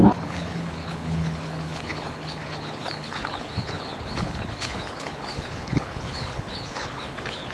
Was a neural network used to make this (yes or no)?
yes